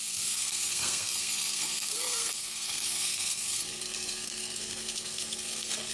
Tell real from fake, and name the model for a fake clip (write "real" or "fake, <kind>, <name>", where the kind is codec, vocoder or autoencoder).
fake, codec, SNAC